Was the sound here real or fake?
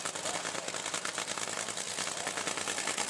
real